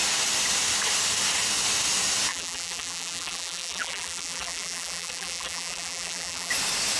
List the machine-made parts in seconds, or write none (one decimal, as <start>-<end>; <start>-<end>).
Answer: 2.3-6.5